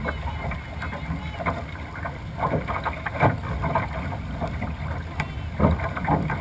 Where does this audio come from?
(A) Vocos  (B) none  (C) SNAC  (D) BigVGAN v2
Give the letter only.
B